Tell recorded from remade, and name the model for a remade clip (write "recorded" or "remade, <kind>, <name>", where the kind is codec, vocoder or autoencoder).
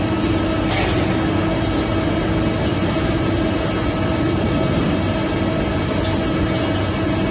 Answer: recorded